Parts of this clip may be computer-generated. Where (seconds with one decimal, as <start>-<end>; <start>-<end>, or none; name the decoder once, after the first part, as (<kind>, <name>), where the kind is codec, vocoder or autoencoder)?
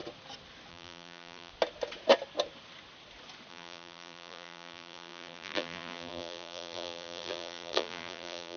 0.7-1.5 (vocoder, BigVGAN v2); 3.5-8.6